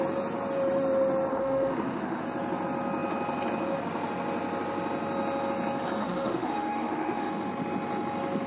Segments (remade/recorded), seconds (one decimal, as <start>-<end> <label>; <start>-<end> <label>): 0.0-1.3 recorded; 1.3-2.2 remade; 2.2-6.0 recorded; 6.0-7.3 remade; 7.3-8.5 recorded